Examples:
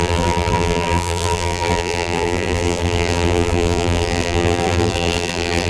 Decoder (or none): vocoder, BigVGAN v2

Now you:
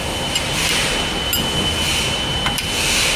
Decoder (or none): none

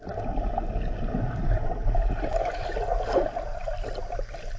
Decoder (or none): none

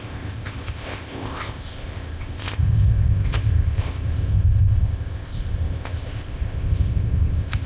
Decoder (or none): codec, ZipCodec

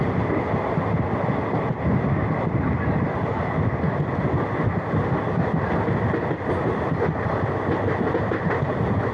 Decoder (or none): none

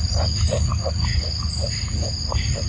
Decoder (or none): none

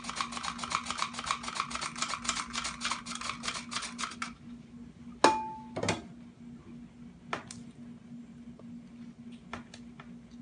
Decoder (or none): none